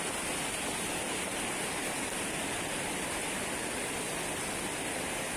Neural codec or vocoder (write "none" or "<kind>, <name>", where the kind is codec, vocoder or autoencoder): none